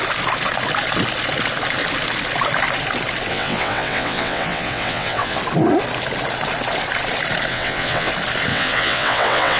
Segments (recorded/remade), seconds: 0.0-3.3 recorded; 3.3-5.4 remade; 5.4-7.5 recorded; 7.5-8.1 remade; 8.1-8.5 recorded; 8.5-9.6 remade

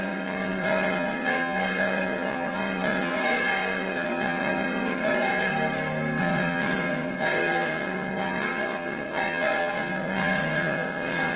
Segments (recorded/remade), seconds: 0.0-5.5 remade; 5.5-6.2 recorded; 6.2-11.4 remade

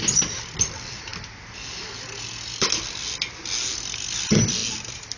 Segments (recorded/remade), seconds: 0.0-5.2 recorded